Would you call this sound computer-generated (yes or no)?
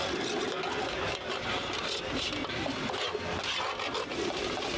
no